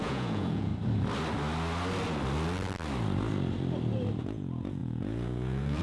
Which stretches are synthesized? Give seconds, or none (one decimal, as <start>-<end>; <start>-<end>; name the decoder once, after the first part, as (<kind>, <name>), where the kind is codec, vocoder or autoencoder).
0.0-0.7 (vocoder, Vocos); 4.2-5.8